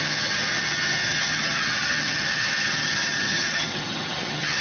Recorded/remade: remade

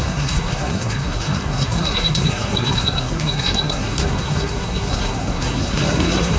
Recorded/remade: remade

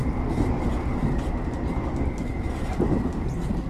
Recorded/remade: recorded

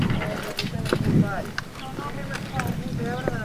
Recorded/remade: recorded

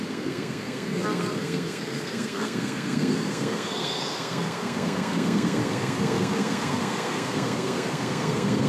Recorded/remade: remade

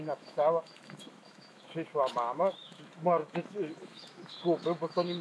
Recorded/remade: remade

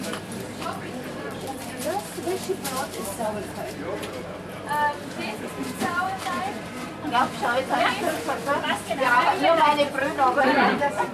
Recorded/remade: remade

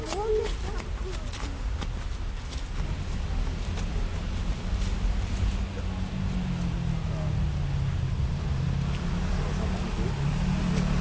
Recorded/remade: recorded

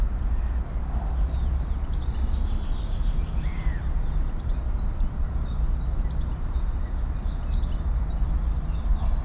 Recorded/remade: recorded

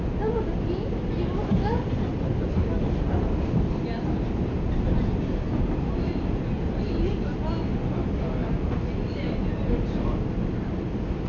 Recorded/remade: recorded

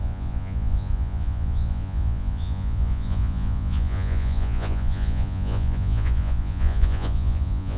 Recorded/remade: remade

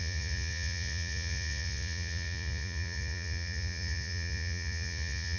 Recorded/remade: remade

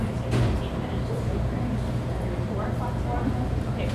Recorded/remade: recorded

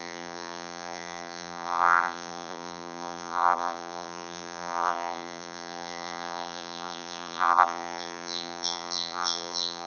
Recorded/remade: remade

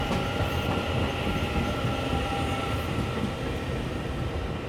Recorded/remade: recorded